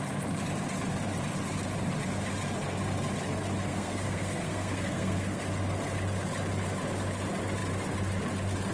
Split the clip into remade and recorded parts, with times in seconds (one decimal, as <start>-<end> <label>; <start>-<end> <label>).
0.0-3.7 recorded; 3.7-5.4 remade; 5.4-8.7 recorded